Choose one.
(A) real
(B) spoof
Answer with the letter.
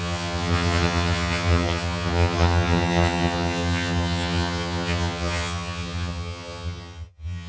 B